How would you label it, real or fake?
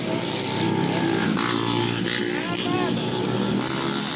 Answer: real